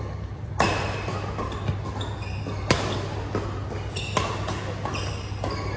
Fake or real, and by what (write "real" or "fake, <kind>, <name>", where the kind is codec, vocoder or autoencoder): real